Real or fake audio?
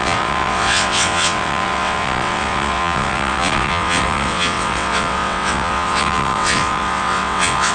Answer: fake